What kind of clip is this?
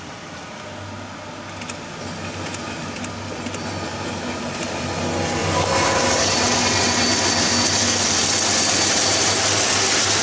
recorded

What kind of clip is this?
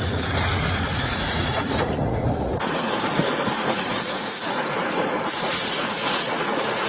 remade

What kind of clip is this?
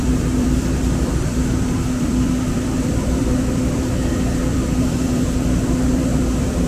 remade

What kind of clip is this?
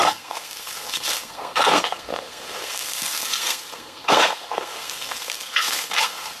remade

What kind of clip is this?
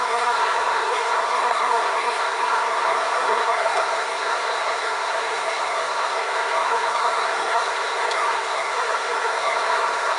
remade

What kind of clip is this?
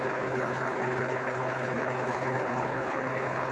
remade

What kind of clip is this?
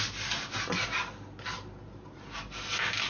recorded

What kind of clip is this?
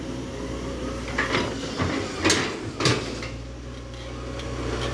recorded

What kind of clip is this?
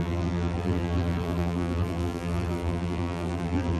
remade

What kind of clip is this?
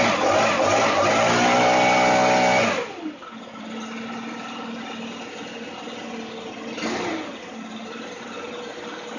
recorded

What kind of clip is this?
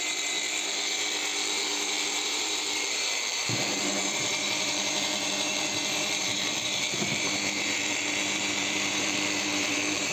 remade